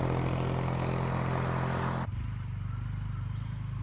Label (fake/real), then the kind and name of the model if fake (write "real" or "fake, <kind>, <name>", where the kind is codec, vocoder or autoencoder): real